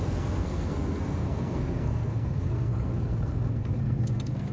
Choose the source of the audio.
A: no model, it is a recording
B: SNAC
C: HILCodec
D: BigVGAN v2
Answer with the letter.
B